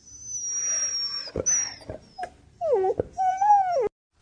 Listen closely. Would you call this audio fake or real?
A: real